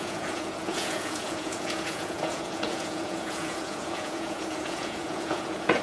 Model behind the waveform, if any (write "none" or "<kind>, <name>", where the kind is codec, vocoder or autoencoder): vocoder, Vocos